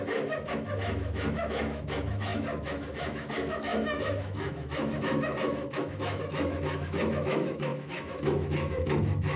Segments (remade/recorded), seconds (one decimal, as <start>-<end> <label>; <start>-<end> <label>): 0.0-9.4 remade